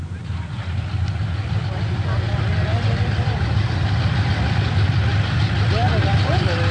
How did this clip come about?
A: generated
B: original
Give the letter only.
B